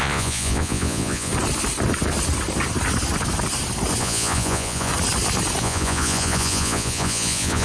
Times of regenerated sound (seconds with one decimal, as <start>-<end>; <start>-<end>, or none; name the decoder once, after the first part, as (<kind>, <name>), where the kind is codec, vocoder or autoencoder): 0.0-1.3 (vocoder, Vocos); 4.0-4.9; 5.6-7.6